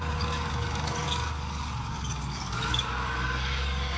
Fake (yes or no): yes